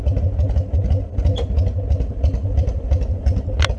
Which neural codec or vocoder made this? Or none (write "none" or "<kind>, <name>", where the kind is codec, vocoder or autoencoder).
none